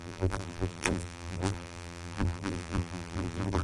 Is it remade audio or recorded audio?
remade